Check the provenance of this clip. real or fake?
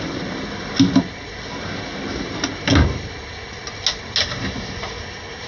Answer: real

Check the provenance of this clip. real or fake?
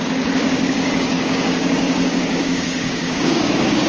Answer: fake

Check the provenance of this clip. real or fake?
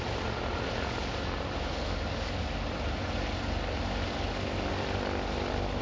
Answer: real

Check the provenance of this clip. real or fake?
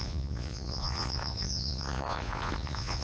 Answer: fake